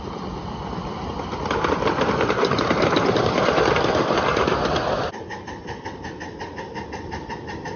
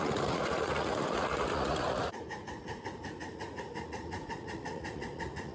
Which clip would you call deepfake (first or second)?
second